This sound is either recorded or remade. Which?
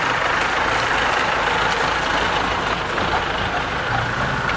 recorded